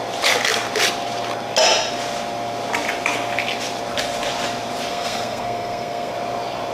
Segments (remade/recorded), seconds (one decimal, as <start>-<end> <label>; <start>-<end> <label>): 0.0-4.9 recorded; 4.9-6.1 remade; 6.1-6.7 recorded